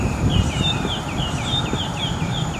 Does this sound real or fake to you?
fake